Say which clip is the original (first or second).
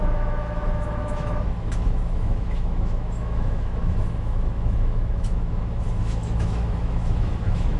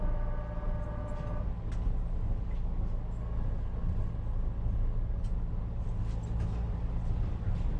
second